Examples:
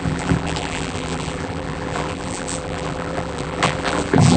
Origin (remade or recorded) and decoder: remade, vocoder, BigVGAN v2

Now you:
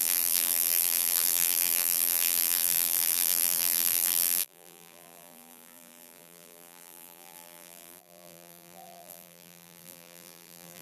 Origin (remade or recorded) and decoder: remade, vocoder, BigVGAN v2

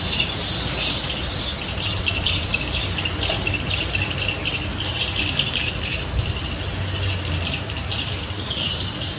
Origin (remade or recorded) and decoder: remade, vocoder, BigVGAN v2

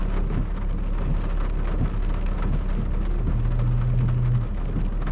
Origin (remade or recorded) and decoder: recorded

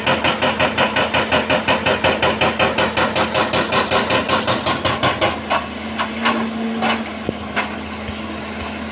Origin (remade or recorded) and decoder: recorded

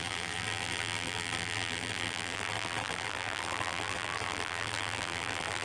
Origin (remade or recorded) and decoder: remade, vocoder, BigVGAN v2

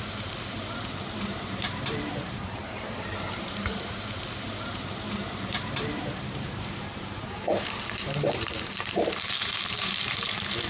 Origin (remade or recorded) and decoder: remade, vocoder, BigVGAN v2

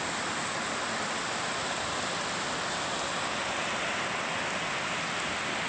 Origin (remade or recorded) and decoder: recorded